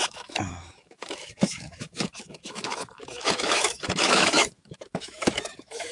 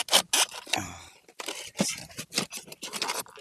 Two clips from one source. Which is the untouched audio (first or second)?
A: second